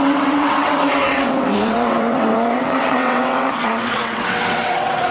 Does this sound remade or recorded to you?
remade